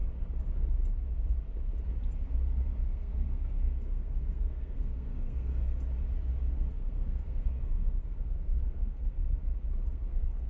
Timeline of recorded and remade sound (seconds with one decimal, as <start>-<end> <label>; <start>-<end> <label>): 0.0-2.8 recorded; 2.8-5.7 remade; 5.7-6.5 recorded; 6.5-9.4 remade; 9.4-9.9 recorded; 9.9-10.5 remade

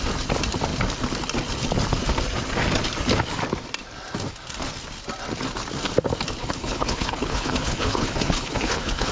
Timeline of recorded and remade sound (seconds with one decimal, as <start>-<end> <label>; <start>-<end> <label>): 0.0-6.4 recorded; 6.4-9.1 remade

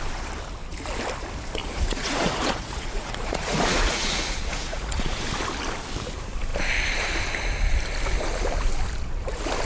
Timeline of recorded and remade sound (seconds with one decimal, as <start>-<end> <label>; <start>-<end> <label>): 0.0-1.6 recorded; 1.6-5.3 remade; 5.3-9.6 recorded